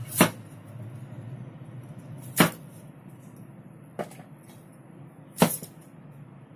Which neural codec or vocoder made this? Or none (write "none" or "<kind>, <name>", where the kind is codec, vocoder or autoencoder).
none